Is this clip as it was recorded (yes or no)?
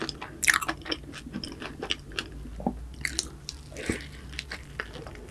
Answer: yes